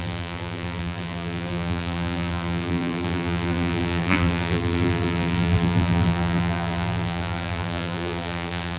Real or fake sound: fake